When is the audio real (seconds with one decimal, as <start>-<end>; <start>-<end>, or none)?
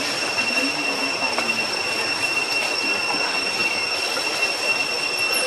0.0-5.5